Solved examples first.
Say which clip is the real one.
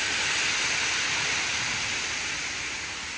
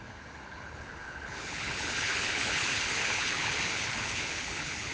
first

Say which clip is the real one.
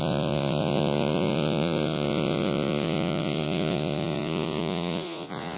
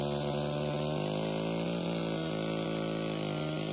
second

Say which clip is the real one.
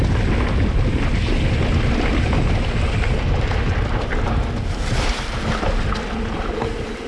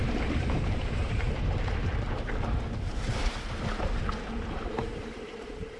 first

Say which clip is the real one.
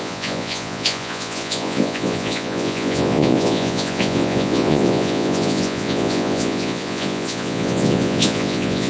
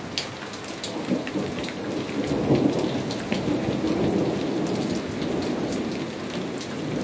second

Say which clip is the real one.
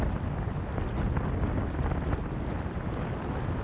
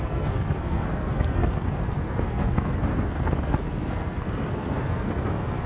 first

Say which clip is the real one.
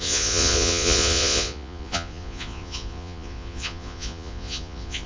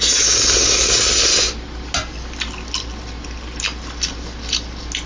second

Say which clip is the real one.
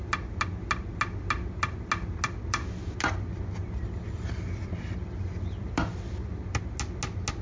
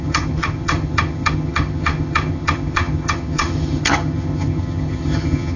first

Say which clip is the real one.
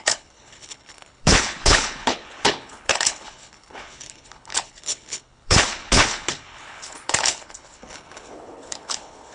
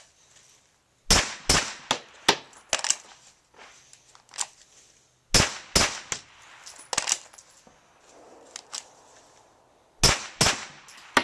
second